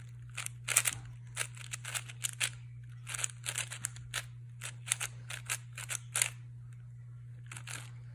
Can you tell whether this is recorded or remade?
recorded